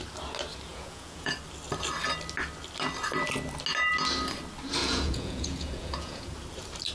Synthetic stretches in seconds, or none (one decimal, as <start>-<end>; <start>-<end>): 0.7-1.3; 4.8-6.3